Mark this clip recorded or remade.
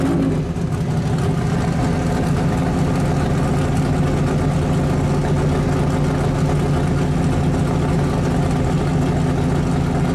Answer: recorded